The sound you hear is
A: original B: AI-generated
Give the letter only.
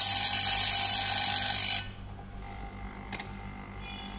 A